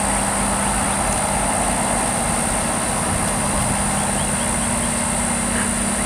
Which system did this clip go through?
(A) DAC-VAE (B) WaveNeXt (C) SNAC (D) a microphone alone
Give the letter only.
D